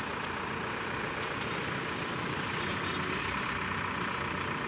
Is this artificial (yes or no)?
yes